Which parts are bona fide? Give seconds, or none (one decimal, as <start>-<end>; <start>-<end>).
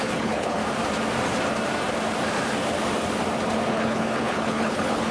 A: 0.6-3.7